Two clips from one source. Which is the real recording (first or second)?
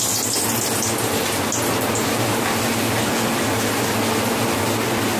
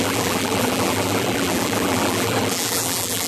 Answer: first